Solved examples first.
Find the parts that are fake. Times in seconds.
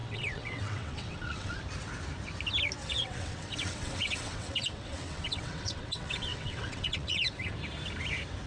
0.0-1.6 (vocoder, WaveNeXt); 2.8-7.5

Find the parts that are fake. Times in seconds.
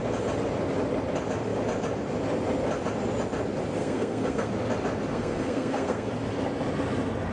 3.8-4.5 (codec, SNAC); 5.1-6.1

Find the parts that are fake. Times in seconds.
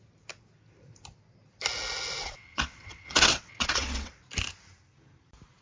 2.2-4.1 (vocoder, WaveNeXt)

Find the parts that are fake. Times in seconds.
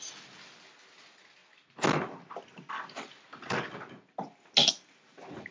none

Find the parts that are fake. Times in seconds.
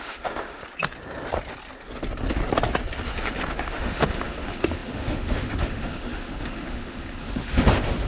0.0-0.6 (autoencoder, DAC-VAE); 3.5-8.1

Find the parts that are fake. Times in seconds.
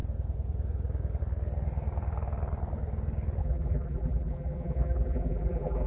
3.4-5.9 (vocoder, BigVGAN v2)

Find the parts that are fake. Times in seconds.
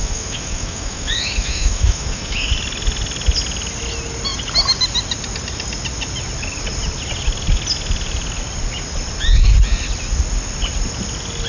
0.0-2.5 (autoencoder, DAC-VAE)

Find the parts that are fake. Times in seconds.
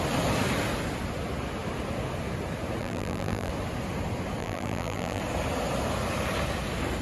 2.8-3.5 (vocoder, BigVGAN v2); 4.4-5.2